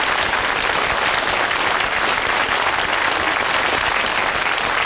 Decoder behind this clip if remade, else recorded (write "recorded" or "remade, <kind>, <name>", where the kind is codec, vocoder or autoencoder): recorded